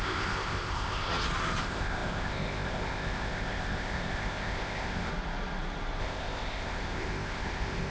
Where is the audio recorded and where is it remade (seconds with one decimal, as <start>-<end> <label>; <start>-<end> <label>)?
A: 0.0-1.1 remade; 1.1-1.6 recorded; 1.6-5.1 remade; 5.1-6.0 recorded; 6.0-7.9 remade